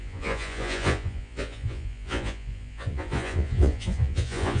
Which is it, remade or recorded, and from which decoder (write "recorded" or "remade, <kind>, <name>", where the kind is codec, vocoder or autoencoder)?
remade, vocoder, Vocos